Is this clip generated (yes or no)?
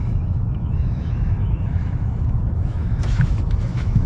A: yes